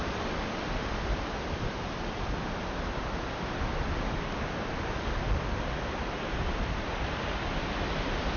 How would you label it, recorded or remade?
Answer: recorded